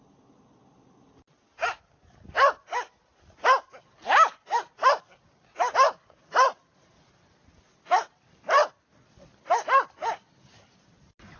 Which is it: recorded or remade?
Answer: recorded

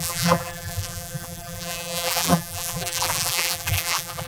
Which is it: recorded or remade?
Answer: remade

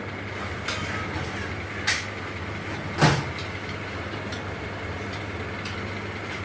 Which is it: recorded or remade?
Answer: recorded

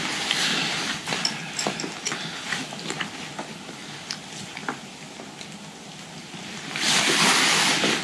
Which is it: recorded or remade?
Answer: remade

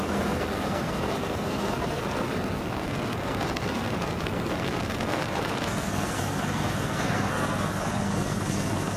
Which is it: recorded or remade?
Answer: remade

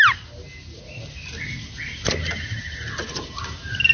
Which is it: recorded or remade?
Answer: recorded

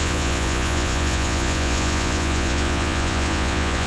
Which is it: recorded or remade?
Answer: remade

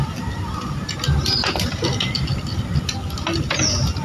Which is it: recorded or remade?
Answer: recorded